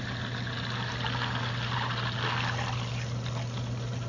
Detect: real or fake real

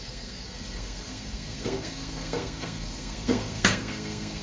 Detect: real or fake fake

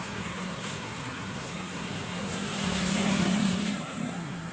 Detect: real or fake fake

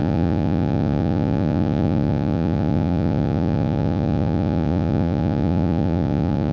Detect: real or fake fake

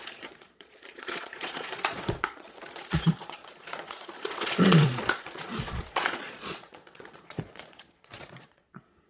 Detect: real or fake fake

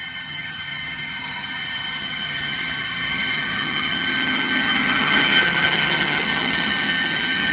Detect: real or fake fake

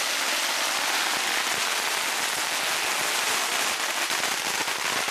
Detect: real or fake real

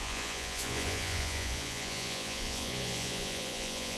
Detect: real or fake fake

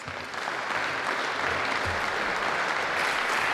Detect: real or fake real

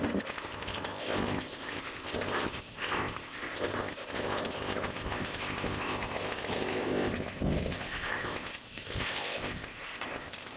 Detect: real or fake fake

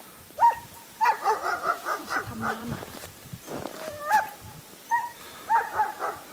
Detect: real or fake fake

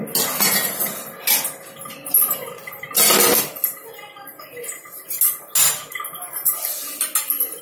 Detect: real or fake real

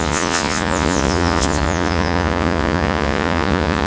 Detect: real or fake fake